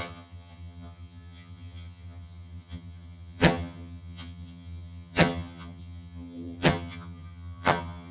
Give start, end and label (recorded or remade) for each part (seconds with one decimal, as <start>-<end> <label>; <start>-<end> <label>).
0.0-8.1 remade